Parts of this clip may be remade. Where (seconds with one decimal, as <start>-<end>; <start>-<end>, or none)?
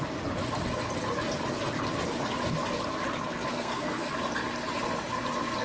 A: 3.5-4.1